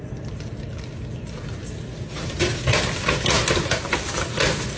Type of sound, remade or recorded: recorded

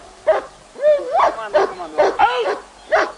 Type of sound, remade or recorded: recorded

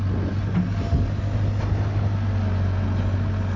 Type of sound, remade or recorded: recorded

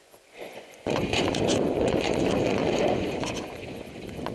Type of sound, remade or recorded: remade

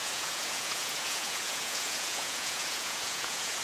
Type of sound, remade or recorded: remade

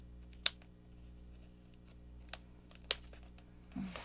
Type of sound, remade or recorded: recorded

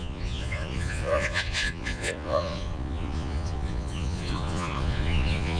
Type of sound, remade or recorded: remade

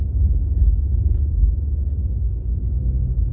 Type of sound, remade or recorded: recorded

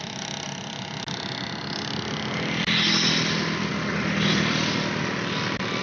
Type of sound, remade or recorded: recorded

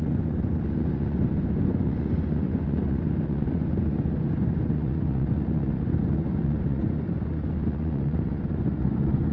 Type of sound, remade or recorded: remade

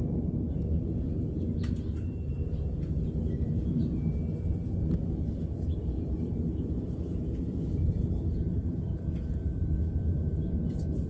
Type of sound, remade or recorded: remade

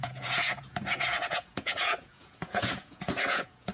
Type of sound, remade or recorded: remade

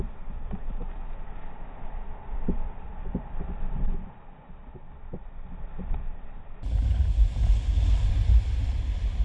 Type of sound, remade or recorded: recorded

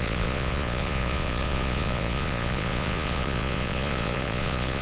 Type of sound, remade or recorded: remade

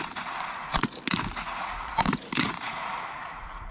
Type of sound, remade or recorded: remade